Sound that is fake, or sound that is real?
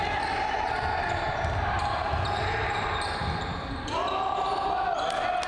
real